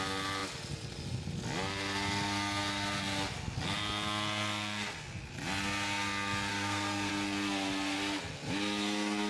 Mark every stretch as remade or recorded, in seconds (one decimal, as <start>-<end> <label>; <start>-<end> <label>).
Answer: 0.0-6.5 recorded; 6.5-7.1 remade; 7.1-9.3 recorded